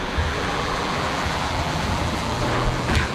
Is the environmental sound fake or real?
fake